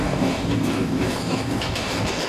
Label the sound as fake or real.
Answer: fake